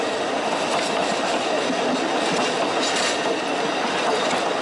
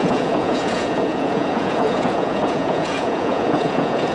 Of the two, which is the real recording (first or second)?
first